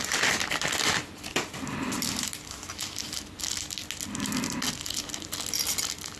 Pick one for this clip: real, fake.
real